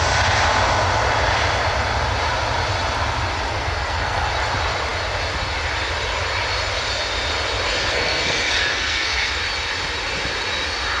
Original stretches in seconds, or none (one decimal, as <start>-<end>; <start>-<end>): 0.0-3.5; 4.3-7.8; 9.3-11.0